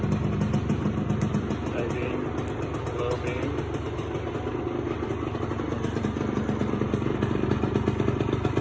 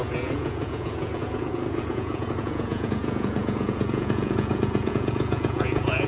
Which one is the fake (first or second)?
second